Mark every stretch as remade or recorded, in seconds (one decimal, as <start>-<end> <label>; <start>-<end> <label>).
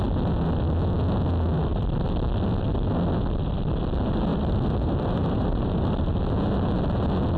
0.0-4.3 recorded; 4.3-6.2 remade; 6.2-7.4 recorded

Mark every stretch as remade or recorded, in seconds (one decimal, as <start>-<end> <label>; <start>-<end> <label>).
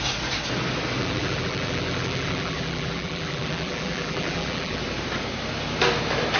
0.0-1.0 recorded; 1.0-4.8 remade; 4.8-6.4 recorded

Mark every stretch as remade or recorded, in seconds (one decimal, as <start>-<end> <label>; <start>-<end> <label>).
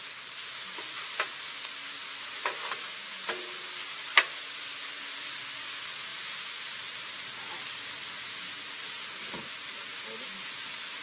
0.0-11.0 recorded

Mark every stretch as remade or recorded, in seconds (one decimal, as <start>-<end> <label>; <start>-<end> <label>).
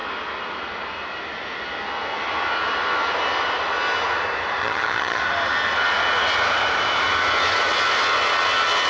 0.0-4.6 recorded; 4.6-5.2 remade; 5.2-8.9 recorded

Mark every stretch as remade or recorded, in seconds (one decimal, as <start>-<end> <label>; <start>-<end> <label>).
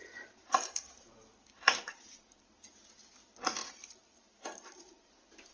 0.0-2.6 remade; 2.6-3.6 recorded; 3.6-5.1 remade; 5.1-5.5 recorded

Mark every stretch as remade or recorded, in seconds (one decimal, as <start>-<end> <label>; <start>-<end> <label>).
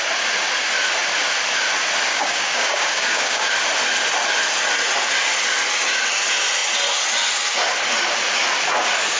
0.0-2.1 recorded; 2.1-3.5 remade; 3.5-9.2 recorded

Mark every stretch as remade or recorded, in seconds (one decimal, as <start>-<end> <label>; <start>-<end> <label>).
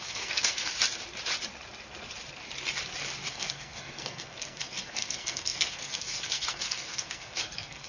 0.0-0.7 remade; 0.7-3.3 recorded; 3.3-7.9 remade